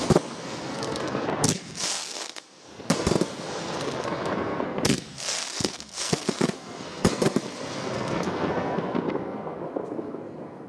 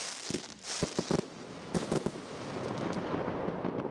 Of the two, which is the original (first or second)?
second